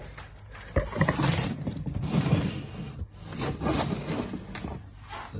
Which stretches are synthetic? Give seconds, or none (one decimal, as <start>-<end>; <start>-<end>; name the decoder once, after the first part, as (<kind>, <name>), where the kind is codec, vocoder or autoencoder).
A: 0.0-2.5 (vocoder, BigVGAN v2)

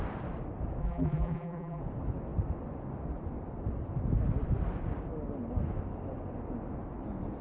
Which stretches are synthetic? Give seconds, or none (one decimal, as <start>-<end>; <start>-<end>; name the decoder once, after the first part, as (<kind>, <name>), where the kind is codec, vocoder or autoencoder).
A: 0.8-1.8 (vocoder, BigVGAN v2)

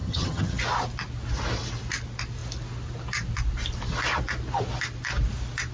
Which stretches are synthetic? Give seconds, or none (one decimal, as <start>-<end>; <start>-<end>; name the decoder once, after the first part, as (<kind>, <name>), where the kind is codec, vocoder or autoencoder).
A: 0.0-0.6 (vocoder, HiFi-GAN)

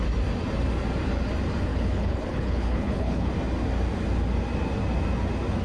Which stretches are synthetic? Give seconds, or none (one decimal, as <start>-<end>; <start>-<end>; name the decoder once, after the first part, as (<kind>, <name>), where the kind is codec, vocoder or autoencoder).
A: 1.7-3.3 (codec, HILCodec)

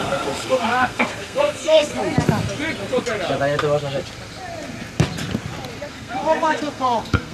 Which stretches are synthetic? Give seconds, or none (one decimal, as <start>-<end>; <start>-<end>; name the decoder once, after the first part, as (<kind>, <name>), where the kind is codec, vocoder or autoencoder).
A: 0.0-1.9 (codec, SNAC); 5.9-7.3